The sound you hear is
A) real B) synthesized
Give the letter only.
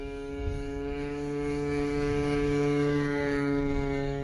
B